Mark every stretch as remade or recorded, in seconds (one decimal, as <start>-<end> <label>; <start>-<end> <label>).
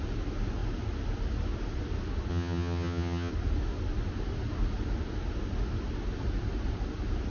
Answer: 0.0-2.3 recorded; 2.3-3.3 remade; 3.3-7.3 recorded